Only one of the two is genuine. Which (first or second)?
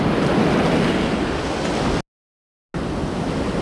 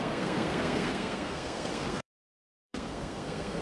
first